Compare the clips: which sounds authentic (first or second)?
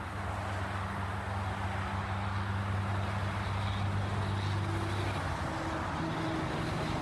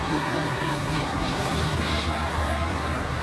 first